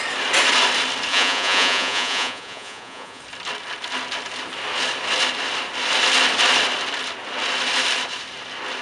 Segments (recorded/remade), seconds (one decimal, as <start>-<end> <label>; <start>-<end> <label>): 0.0-1.1 recorded; 1.1-3.2 remade; 3.2-8.8 recorded